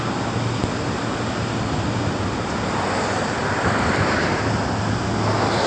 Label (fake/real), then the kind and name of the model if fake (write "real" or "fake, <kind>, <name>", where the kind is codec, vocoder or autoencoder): real